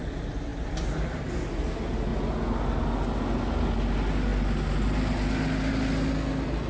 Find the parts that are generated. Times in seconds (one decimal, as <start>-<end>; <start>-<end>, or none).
none